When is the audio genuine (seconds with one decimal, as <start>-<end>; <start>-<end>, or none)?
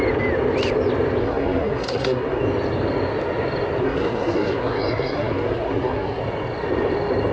0.0-1.2; 2.4-3.8; 6.2-7.3